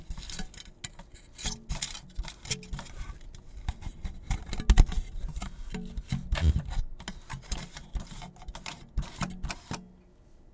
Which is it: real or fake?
real